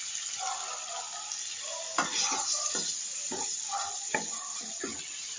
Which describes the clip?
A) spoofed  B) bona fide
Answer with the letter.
B